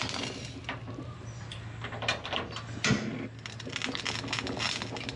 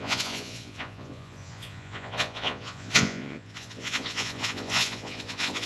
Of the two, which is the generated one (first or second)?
second